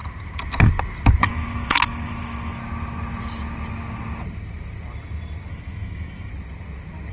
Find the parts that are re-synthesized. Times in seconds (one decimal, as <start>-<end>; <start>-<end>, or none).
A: 1.2-2.6; 5.5-6.3